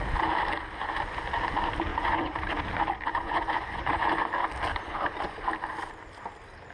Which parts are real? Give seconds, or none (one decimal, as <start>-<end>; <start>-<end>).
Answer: 0.0-1.9; 2.4-3.1; 4.1-4.7; 5.5-6.7